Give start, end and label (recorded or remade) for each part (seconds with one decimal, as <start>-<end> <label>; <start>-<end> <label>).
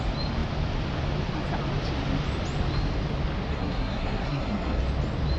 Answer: 0.0-3.5 recorded; 3.5-4.8 remade; 4.8-5.4 recorded